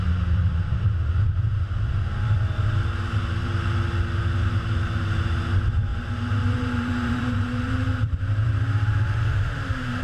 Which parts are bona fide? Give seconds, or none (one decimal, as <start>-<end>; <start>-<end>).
0.0-5.9; 9.2-10.0